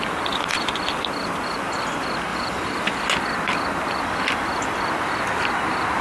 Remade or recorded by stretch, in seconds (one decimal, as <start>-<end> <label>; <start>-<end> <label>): 0.0-2.3 recorded; 2.3-3.0 remade; 3.0-6.0 recorded